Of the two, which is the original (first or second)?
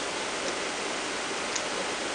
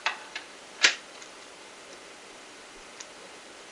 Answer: first